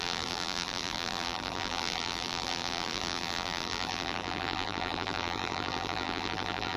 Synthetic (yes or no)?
yes